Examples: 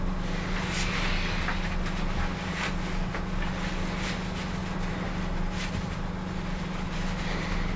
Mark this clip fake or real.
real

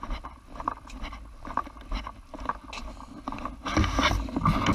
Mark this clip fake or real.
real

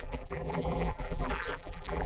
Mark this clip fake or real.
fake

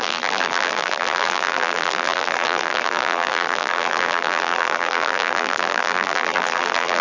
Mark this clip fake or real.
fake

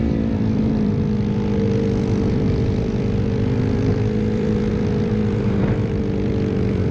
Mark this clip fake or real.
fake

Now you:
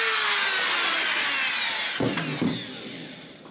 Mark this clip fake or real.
real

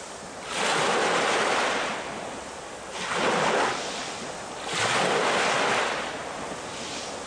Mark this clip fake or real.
real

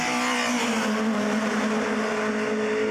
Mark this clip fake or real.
real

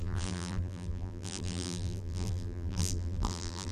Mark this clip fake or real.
fake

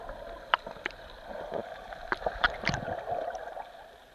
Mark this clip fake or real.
fake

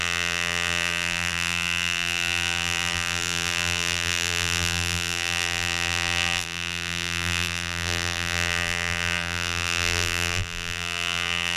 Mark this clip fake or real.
fake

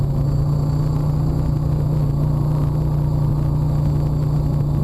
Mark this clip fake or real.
real